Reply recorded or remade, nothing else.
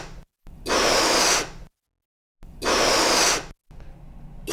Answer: recorded